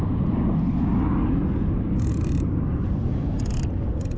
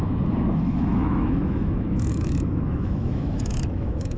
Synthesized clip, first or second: second